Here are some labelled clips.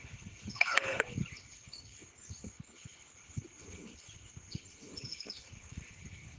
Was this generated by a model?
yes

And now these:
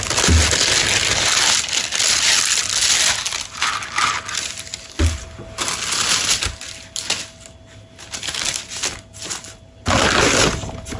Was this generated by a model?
no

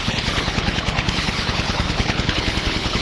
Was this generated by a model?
yes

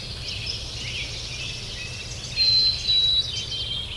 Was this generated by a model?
no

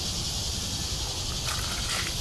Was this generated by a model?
no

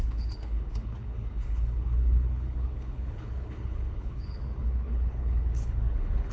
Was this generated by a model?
yes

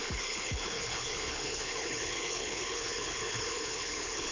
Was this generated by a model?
yes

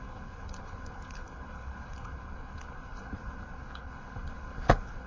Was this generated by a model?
yes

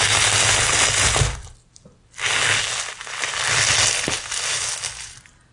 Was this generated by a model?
no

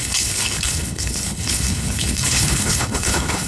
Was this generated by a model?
yes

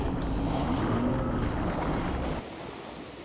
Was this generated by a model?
no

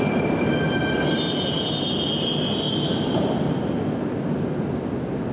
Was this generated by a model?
no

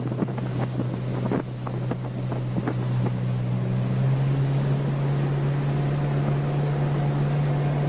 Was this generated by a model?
no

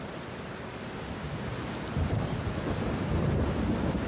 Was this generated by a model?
no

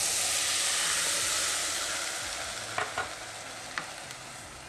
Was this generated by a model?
no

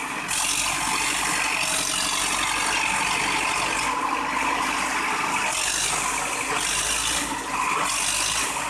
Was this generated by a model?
no